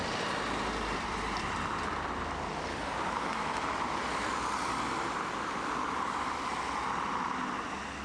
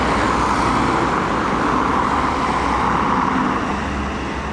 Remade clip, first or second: first